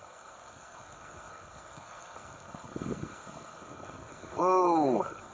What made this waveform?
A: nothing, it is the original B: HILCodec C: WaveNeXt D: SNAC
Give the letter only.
D